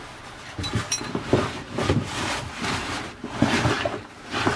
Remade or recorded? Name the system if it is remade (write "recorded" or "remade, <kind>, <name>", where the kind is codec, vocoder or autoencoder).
remade, vocoder, BigVGAN v2